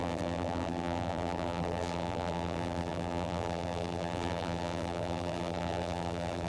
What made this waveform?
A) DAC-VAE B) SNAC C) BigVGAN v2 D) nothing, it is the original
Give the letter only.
C